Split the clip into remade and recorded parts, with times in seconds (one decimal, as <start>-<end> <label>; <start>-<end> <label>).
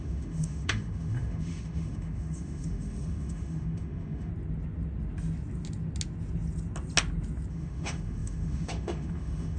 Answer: 0.0-4.3 remade; 4.3-7.5 recorded; 7.5-9.6 remade